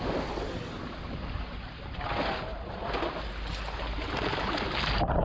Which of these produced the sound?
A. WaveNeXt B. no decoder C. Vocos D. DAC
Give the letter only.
B